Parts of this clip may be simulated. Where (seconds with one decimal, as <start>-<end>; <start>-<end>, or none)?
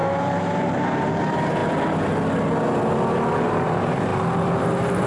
0.0-1.6; 3.4-4.1; 4.6-5.1